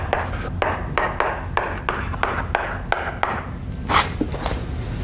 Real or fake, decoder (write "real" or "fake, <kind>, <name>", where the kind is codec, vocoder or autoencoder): real